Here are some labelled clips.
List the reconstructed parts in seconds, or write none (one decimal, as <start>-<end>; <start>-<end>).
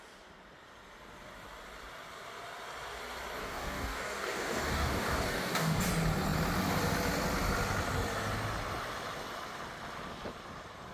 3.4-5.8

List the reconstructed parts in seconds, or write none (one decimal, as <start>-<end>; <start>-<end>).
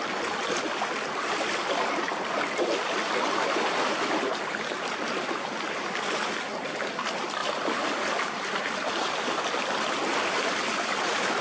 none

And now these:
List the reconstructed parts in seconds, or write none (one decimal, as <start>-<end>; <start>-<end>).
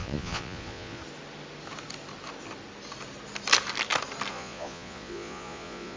0.0-1.0; 4.3-6.0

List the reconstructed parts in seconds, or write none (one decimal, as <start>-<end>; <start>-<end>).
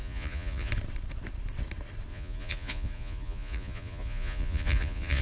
0.0-0.7; 2.1-5.2